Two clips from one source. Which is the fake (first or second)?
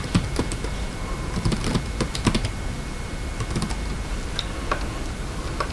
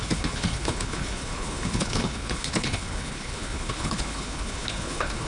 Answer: second